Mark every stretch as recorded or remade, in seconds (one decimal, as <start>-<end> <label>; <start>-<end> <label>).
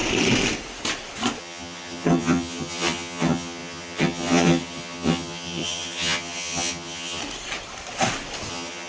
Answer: 0.0-1.4 recorded; 1.4-7.2 remade; 7.2-8.5 recorded; 8.5-8.9 remade